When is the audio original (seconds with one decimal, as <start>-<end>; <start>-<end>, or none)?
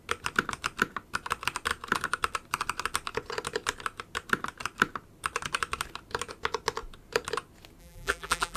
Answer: 0.0-7.8